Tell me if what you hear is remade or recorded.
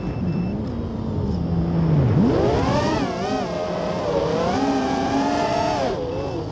recorded